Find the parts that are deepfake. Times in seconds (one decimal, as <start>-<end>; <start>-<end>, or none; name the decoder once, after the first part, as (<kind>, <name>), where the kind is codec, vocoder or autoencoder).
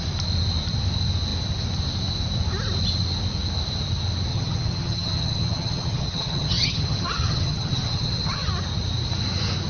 4.3-8.5 (vocoder, HiFi-GAN)